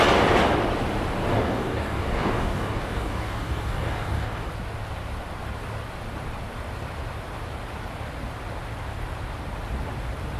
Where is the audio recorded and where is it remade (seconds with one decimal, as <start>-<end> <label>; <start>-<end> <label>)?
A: 0.0-1.3 recorded; 1.3-4.5 remade; 4.5-10.4 recorded